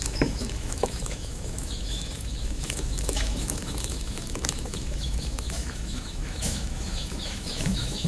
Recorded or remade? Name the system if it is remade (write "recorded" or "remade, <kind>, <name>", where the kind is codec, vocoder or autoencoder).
remade, autoencoder, DAC-VAE